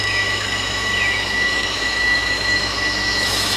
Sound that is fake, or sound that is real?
fake